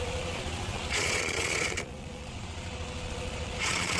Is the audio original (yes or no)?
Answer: no